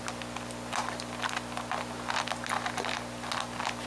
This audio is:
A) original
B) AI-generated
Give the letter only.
A